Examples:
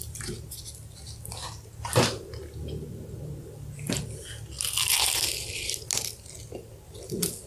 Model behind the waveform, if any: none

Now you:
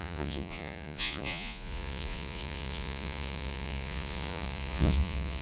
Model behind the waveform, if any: vocoder, Vocos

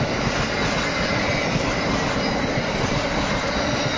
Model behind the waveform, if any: none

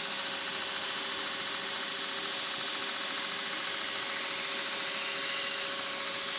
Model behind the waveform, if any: none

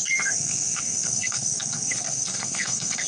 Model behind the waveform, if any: codec, SNAC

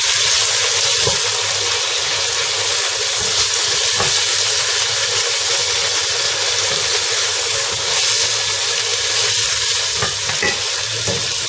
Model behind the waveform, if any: none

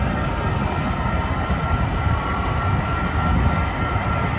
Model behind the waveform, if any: none